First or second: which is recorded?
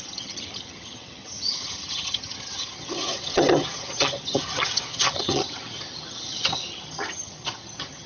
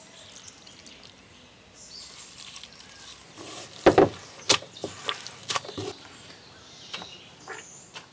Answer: second